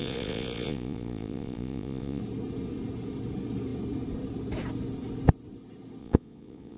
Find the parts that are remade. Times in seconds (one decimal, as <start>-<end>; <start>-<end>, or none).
0.0-2.2; 6.0-6.8